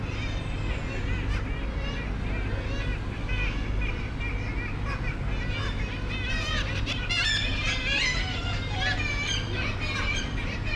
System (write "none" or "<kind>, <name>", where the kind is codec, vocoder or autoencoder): none